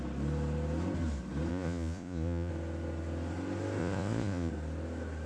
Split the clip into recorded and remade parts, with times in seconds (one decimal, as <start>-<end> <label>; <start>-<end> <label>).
0.0-1.5 recorded; 1.5-2.5 remade; 2.5-3.8 recorded; 3.8-4.5 remade; 4.5-5.3 recorded